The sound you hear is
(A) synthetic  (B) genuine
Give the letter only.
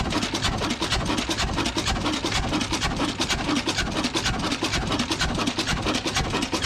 B